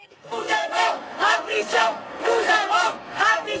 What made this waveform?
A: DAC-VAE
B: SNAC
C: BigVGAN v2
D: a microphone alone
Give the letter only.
B